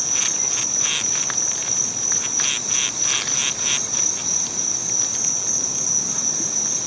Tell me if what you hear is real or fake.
real